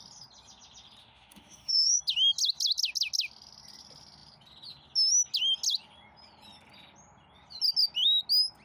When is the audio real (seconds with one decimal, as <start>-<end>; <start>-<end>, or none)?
0.0-1.0; 2.0-8.6